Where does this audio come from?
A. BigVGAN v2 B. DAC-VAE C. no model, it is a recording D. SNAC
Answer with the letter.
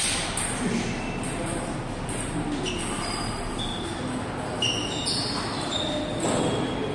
C